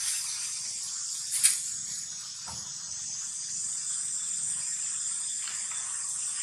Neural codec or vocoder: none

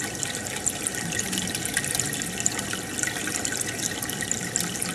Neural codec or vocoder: none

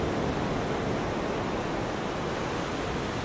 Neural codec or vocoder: none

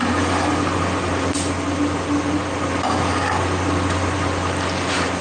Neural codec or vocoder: none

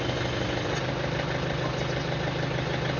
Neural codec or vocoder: none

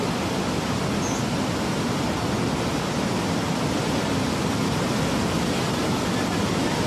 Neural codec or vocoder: none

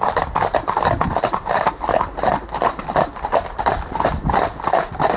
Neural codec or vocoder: none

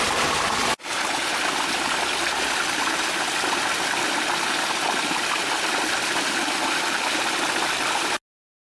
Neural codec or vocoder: none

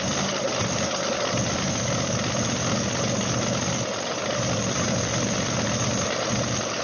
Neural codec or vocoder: none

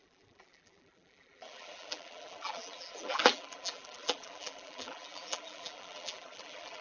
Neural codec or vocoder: vocoder, BigVGAN v2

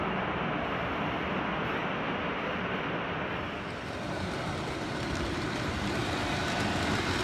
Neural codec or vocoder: none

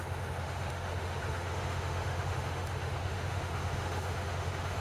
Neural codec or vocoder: autoencoder, DAC-VAE